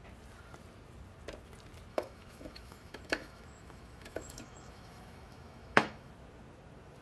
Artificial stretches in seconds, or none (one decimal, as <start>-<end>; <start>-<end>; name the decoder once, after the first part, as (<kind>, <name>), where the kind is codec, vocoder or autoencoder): 1.9-6.1 (autoencoder, DAC-VAE)